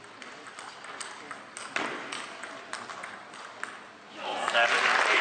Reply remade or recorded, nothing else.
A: recorded